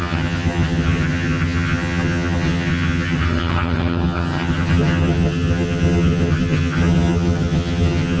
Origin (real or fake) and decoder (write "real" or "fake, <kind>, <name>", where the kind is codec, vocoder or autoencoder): fake, vocoder, HiFi-GAN